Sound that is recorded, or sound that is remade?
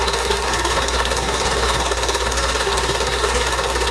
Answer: remade